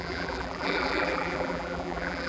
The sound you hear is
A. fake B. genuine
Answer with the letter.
A